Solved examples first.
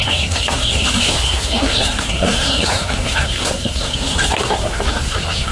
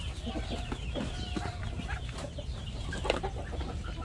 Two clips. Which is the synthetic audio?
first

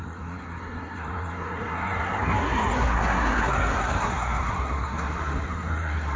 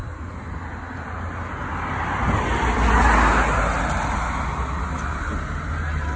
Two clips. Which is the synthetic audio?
first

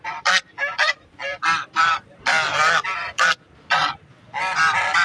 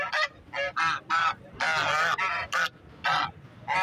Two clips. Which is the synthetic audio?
first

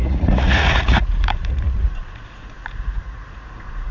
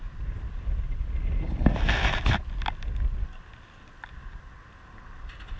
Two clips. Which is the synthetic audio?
first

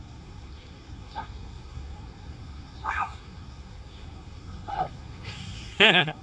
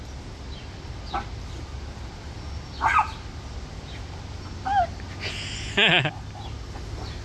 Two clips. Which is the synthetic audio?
first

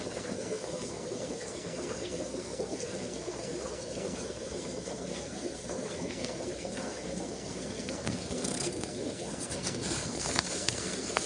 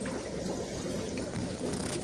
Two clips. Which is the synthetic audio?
first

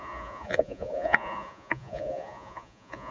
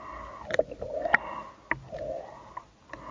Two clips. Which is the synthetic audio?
first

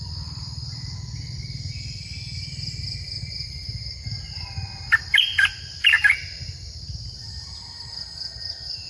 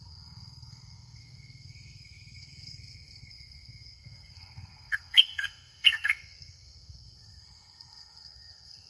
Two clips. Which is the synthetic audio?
second